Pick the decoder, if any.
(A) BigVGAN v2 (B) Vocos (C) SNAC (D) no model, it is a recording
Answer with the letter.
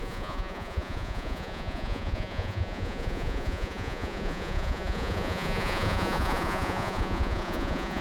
B